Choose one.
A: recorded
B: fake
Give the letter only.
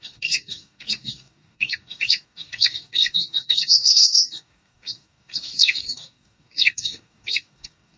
B